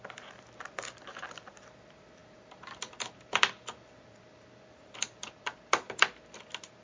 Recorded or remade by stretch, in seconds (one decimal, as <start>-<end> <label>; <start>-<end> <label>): 0.0-2.2 recorded; 2.2-5.9 remade; 5.9-6.8 recorded